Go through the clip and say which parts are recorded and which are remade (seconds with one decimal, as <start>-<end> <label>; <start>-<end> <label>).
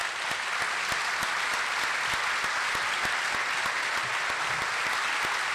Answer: 0.0-5.5 recorded